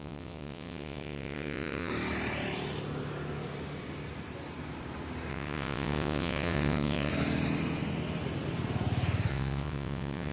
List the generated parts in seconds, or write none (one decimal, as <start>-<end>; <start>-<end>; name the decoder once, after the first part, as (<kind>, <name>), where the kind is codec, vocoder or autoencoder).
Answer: 0.0-1.9 (vocoder, WaveNeXt); 5.3-7.1; 9.3-10.3